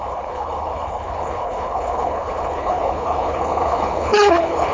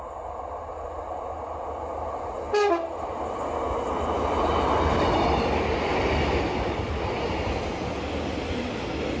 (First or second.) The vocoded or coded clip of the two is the first